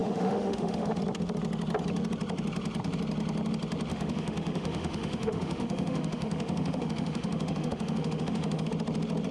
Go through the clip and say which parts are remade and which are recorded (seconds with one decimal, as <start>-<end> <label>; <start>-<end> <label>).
0.0-1.0 remade; 1.0-3.9 recorded; 3.9-8.7 remade; 8.7-9.3 recorded